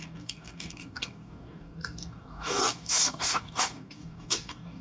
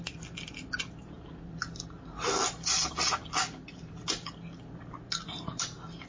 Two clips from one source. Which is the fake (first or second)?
first